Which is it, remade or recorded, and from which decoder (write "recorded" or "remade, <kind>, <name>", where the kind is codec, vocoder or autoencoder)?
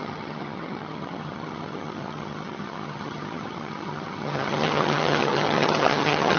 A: remade, vocoder, HiFi-GAN